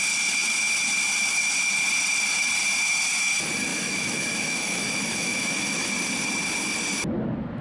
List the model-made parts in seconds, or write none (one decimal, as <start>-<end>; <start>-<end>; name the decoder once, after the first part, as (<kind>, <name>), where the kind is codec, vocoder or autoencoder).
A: 3.7-5.9 (autoencoder, DAC-VAE)